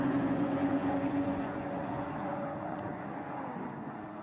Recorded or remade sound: remade